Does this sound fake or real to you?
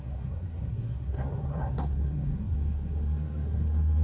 fake